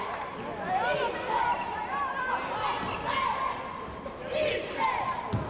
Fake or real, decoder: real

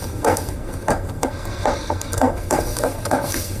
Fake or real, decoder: fake, codec, SNAC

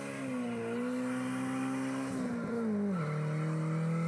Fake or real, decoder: real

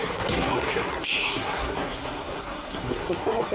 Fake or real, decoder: fake, codec, SNAC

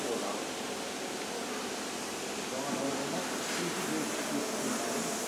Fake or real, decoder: real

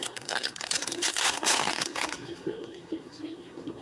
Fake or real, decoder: fake, codec, SNAC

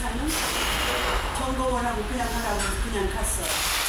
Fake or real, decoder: real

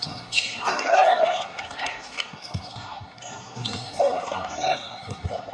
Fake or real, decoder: fake, codec, SNAC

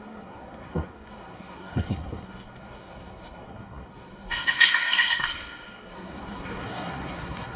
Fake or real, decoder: fake, codec, SNAC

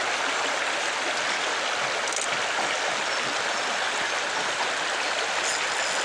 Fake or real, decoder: real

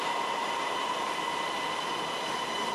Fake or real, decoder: real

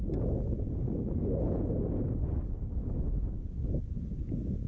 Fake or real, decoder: real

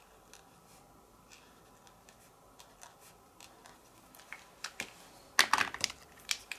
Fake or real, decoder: real